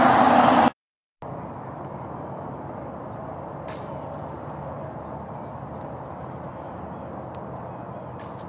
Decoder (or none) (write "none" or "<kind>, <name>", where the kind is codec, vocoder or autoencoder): none